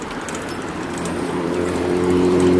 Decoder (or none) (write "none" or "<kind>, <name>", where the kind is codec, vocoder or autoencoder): none